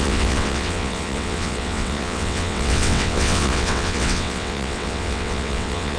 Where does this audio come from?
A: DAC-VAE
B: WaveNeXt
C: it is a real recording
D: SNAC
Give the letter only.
B